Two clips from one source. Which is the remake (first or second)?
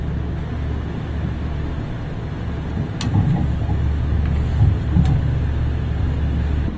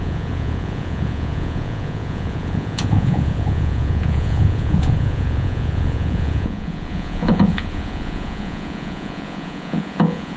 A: second